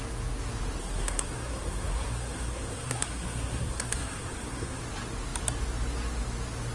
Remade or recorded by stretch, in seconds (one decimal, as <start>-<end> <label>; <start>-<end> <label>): 0.0-0.8 recorded; 0.8-4.8 remade; 4.8-6.7 recorded